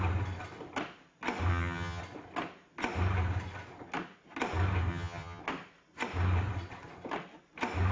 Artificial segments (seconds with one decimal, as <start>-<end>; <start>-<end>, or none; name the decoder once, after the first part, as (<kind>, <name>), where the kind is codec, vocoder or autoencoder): 1.5-2.0 (vocoder, HiFi-GAN); 4.9-5.4